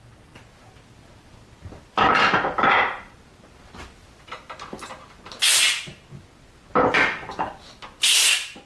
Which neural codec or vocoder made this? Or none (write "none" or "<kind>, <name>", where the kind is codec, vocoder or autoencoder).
none